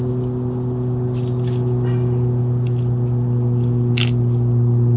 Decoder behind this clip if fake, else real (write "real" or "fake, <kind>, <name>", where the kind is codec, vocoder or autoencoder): real